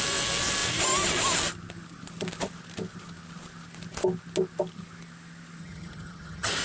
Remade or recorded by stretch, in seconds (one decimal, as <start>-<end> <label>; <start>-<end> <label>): 0.0-5.6 recorded; 5.6-6.6 remade